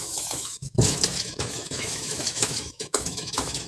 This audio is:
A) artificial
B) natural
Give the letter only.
A